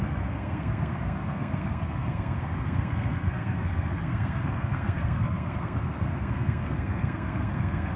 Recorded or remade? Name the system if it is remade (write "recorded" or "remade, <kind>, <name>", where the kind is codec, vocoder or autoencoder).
remade, codec, SNAC